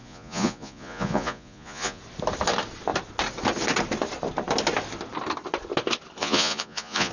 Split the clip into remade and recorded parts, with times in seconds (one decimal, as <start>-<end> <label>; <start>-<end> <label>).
0.0-2.0 remade; 2.0-6.2 recorded; 6.2-7.1 remade